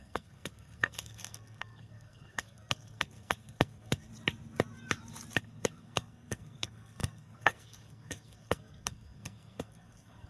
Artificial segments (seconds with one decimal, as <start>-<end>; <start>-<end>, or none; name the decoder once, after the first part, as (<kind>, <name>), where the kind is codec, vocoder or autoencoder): 0.0-4.1 (codec, SNAC); 5.4-10.3